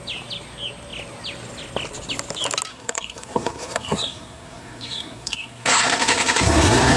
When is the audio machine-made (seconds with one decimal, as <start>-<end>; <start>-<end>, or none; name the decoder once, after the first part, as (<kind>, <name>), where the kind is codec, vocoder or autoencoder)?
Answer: 2.7-7.0 (codec, SNAC)